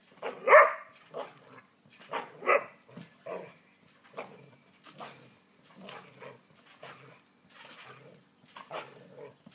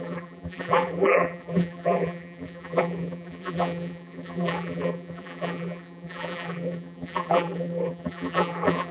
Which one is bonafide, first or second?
first